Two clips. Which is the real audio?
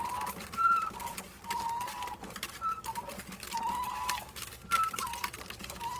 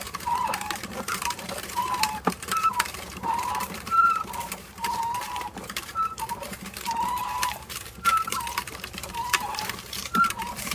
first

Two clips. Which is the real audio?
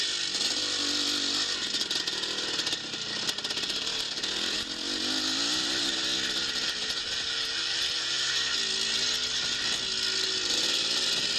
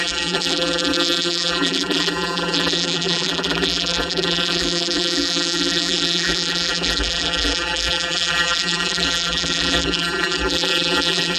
first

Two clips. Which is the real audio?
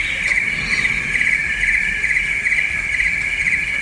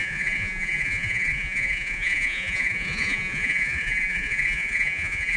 first